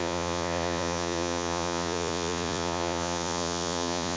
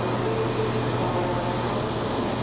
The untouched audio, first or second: second